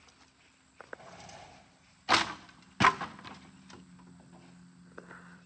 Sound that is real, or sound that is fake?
real